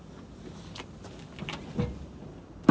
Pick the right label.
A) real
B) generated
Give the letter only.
A